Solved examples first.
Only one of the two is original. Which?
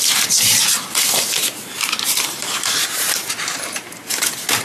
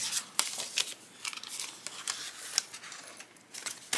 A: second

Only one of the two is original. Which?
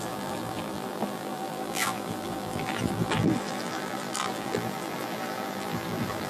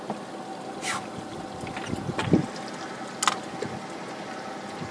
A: second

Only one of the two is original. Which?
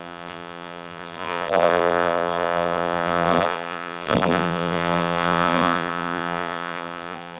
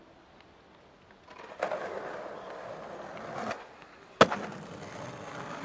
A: second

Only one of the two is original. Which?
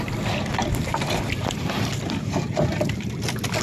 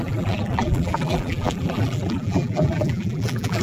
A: first